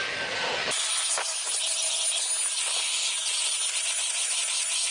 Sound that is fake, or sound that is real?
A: real